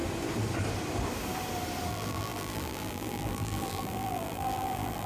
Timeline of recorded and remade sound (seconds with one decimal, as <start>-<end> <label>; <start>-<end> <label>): 0.0-1.9 recorded; 1.9-5.1 remade